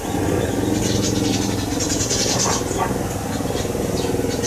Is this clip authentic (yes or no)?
yes